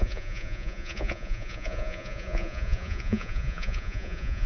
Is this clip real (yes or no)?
no